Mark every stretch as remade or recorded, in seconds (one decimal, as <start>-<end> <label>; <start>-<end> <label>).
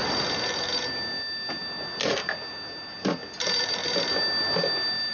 0.0-5.1 recorded